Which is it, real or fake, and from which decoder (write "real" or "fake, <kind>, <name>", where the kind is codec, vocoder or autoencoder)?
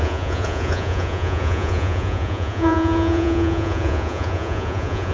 fake, vocoder, Vocos